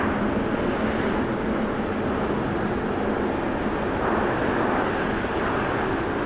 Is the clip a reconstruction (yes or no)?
no